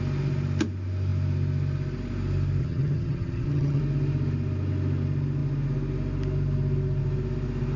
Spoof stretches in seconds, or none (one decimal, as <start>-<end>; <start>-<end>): 2.6-3.8